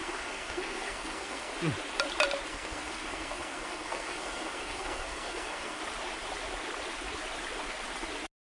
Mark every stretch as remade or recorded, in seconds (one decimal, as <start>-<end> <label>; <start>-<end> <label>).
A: 0.0-1.5 remade; 1.5-2.5 recorded; 2.5-5.8 remade; 5.8-8.4 recorded